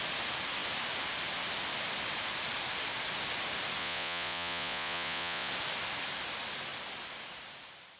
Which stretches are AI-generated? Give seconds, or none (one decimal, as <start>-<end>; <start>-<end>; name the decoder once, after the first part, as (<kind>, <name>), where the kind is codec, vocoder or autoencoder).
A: 3.8-5.5 (vocoder, Vocos)